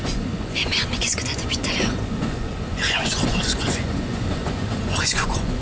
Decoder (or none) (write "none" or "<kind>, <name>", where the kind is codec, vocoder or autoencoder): vocoder, Vocos